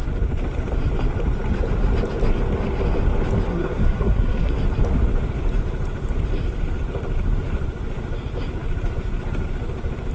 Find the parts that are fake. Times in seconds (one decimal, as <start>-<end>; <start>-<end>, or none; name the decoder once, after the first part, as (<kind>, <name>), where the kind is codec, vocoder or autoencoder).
3.5-4.5 (codec, SNAC)